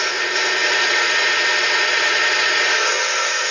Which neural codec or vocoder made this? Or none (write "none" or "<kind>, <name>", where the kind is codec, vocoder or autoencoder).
vocoder, Vocos